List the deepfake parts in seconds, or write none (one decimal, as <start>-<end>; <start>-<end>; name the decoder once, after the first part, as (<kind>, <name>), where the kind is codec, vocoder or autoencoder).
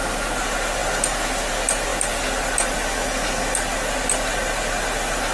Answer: none